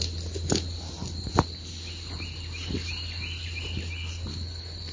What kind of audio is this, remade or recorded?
recorded